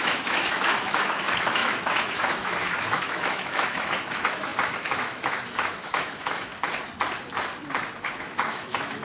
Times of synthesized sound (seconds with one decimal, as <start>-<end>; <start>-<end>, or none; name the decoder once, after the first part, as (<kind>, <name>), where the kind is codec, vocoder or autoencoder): 0.0-6.5 (autoencoder, DAC-VAE); 8.0-9.0